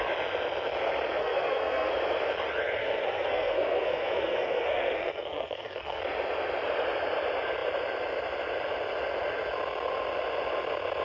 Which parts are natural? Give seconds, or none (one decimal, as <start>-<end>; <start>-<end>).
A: 0.0-1.2; 1.9-2.8; 6.0-11.0